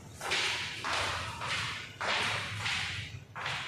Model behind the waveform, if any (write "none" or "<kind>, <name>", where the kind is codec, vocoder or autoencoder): vocoder, BigVGAN v2